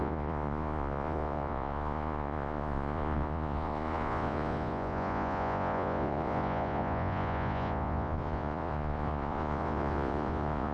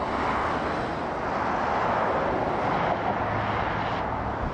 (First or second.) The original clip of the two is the second